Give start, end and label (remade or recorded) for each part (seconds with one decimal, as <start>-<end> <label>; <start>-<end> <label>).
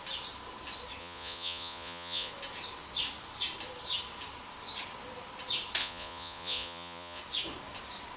0.0-1.0 recorded; 1.0-2.3 remade; 2.3-5.8 recorded; 5.8-7.2 remade; 7.2-8.2 recorded